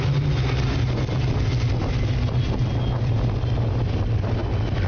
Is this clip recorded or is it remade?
recorded